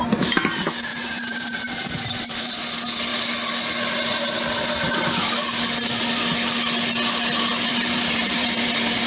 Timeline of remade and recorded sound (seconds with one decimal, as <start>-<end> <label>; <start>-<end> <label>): 0.0-0.9 recorded; 0.9-2.6 remade; 2.6-7.7 recorded; 7.7-9.1 remade